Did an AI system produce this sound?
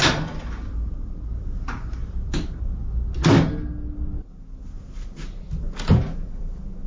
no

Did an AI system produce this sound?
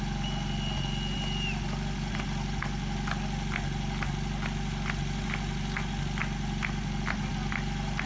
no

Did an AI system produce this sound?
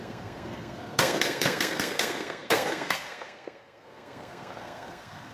yes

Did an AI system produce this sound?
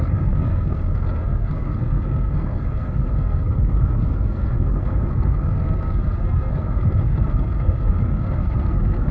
yes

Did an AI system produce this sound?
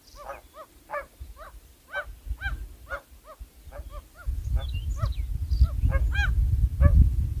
no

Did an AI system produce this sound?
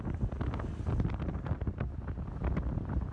no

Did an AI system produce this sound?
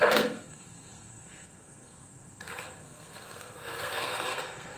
yes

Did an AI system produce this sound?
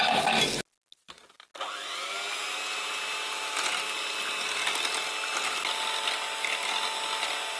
no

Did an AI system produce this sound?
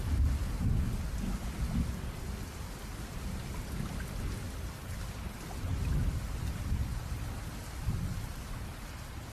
no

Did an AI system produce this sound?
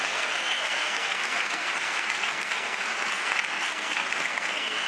yes